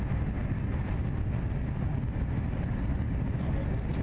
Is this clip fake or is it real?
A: real